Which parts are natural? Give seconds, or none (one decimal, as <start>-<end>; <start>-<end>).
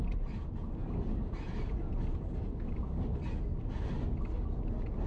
0.0-5.1